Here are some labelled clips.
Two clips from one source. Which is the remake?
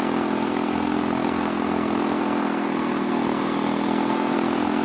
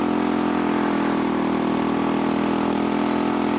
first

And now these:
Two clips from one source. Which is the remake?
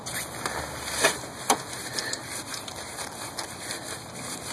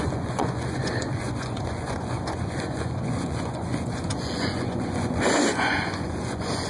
second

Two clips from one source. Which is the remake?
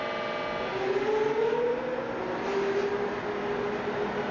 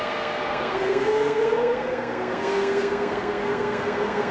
second